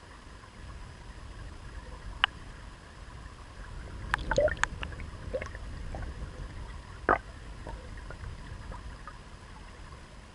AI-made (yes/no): no